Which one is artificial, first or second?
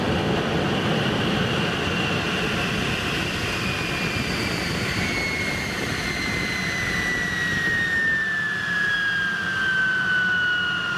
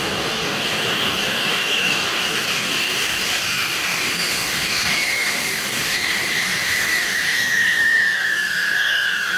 second